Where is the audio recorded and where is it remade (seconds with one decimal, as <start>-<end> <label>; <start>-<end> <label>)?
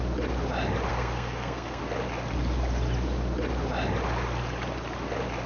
0.0-0.9 recorded; 0.9-1.8 remade; 1.8-5.5 recorded